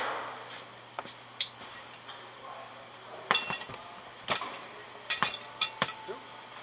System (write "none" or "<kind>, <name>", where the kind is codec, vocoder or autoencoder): none